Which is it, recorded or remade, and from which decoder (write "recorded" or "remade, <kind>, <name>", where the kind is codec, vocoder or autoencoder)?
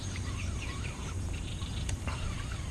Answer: remade, vocoder, BigVGAN v2